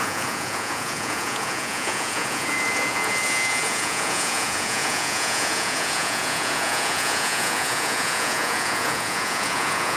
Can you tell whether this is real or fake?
fake